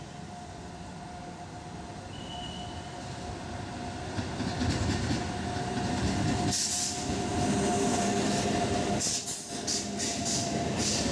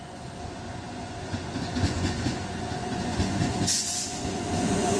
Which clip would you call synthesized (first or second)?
second